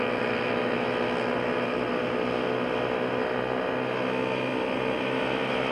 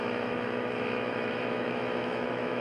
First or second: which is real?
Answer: first